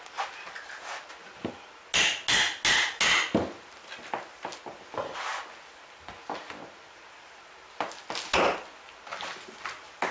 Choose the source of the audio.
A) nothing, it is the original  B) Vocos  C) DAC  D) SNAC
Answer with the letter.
A